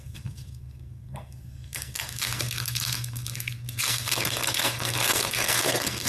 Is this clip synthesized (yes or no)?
yes